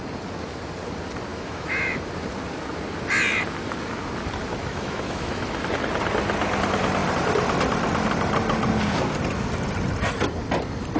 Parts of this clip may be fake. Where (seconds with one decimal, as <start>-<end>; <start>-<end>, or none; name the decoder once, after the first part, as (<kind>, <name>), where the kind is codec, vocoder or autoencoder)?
1.3-2.0 (autoencoder, DAC-VAE); 4.6-5.6